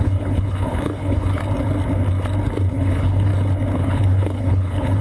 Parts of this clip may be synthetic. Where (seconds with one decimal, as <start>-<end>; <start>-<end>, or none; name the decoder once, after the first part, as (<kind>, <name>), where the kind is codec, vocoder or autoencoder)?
0.0-1.4 (codec, HILCodec); 2.7-3.3; 3.8-5.0